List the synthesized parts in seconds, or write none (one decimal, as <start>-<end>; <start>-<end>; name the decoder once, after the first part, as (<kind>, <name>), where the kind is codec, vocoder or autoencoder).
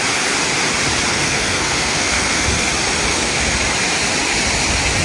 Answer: 1.1-2.7 (codec, SNAC); 3.1-3.6